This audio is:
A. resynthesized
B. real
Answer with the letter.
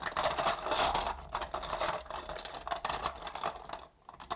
B